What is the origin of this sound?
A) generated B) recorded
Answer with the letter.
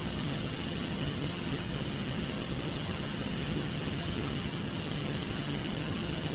A